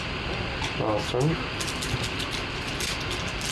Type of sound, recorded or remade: recorded